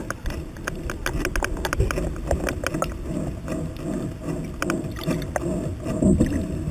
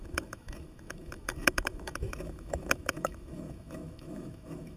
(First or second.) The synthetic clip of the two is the second